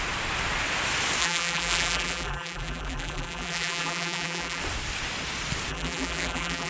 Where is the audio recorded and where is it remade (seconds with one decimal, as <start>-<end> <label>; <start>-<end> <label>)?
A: 0.0-1.2 recorded; 1.2-4.6 remade; 4.6-5.7 recorded; 5.7-6.7 remade

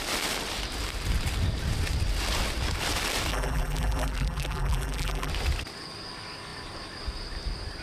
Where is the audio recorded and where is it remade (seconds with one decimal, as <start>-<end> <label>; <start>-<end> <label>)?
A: 0.0-3.3 recorded; 3.3-5.3 remade; 5.3-7.8 recorded